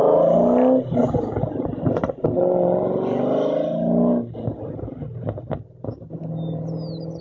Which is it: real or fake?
real